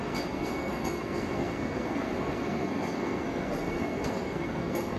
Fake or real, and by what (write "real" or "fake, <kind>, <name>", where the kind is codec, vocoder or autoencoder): fake, codec, SNAC